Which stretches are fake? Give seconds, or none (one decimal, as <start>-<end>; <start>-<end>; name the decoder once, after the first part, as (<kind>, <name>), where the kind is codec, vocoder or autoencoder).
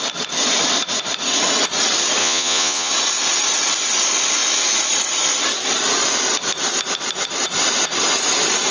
2.2-2.9 (vocoder, Vocos)